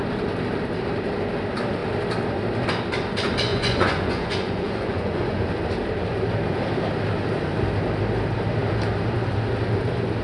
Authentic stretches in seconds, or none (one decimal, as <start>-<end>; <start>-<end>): 0.0-3.5; 5.4-10.2